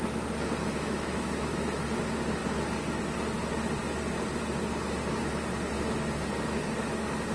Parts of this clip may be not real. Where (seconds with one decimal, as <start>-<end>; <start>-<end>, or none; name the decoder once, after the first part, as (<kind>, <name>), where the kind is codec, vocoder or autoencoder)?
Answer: 0.6-1.8 (autoencoder, DAC-VAE)